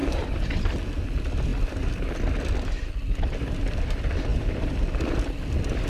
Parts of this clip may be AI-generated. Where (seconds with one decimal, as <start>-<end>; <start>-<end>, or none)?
0.0-0.8; 4.3-4.8